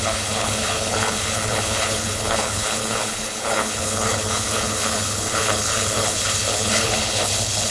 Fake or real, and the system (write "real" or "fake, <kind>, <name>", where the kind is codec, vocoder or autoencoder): fake, codec, HILCodec